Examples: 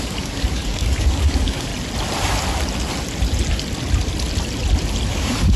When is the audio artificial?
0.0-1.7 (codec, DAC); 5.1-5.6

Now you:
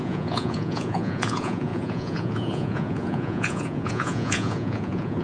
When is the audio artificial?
0.0-5.2 (vocoder, Vocos)

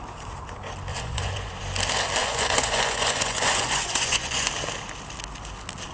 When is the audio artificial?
0.9-1.5 (vocoder, Vocos); 2.2-4.5

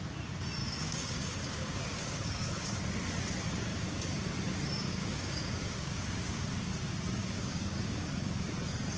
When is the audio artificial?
0.6-2.8 (codec, DAC); 3.7-4.3; 4.9-6.7; 7.2-8.5

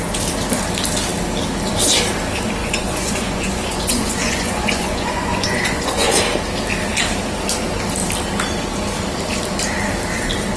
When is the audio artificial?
2.6-6.2 (vocoder, Vocos)

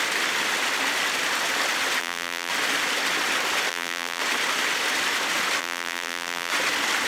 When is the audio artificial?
2.0-2.5 (vocoder, BigVGAN v2); 3.7-4.2; 5.6-6.5

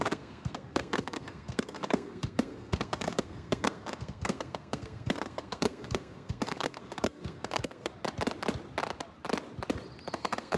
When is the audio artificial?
0.0-7.9 (codec, SNAC); 10.1-10.6

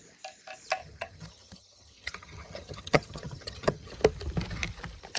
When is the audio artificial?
0.8-3.9 (vocoder, HiFi-GAN)